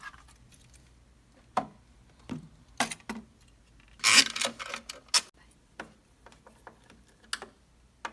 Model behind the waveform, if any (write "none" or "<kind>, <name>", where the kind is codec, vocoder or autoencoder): none